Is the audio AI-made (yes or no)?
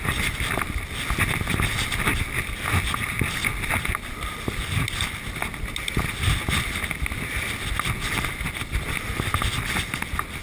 no